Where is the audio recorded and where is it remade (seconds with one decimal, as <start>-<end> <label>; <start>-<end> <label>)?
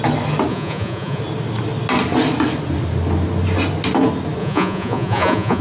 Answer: 0.0-0.5 recorded; 0.5-1.2 remade; 1.2-4.4 recorded; 4.4-5.6 remade